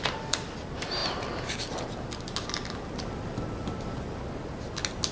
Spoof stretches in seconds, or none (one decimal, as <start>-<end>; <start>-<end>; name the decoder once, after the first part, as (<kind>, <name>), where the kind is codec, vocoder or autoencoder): none